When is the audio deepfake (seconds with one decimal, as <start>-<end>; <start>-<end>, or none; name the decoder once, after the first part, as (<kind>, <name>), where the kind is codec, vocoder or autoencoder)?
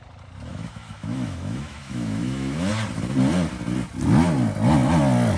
0.5-2.7 (autoencoder, DAC-VAE)